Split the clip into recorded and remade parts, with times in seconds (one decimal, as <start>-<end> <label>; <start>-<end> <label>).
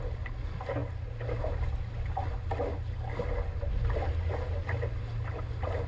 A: 0.0-5.9 recorded